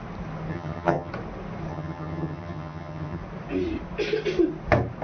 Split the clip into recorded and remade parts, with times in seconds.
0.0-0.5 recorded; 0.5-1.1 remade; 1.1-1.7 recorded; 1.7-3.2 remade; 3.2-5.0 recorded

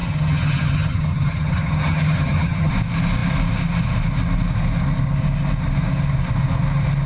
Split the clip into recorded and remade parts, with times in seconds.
0.0-2.7 remade; 2.7-7.1 recorded

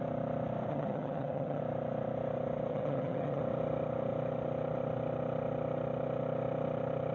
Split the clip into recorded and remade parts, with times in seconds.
0.0-0.7 recorded; 0.7-1.6 remade; 1.6-2.7 recorded; 2.7-3.4 remade; 3.4-7.1 recorded

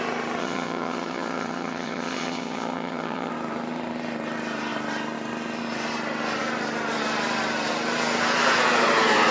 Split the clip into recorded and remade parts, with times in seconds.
0.0-0.4 recorded; 0.4-3.3 remade; 3.3-9.3 recorded

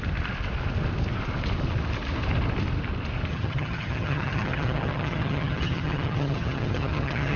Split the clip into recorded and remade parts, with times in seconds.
0.0-3.3 recorded; 3.3-7.4 remade

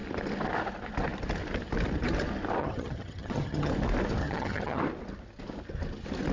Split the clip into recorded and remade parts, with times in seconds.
0.0-2.6 recorded; 2.6-3.7 remade; 3.7-4.2 recorded; 4.2-4.8 remade; 4.8-6.3 recorded